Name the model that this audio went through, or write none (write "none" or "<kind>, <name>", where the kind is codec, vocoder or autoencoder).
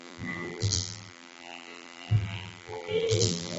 vocoder, BigVGAN v2